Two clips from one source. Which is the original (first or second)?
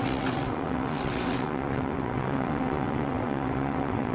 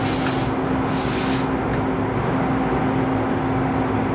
second